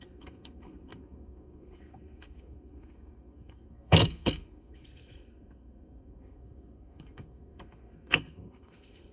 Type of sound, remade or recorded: remade